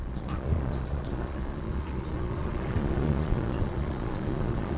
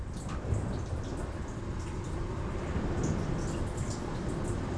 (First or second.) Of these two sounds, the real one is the second